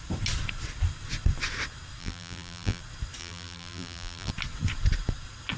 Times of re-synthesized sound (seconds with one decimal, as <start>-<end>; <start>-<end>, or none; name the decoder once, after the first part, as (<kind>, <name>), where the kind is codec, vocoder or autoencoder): 2.0-2.8 (vocoder, BigVGAN v2); 3.2-4.3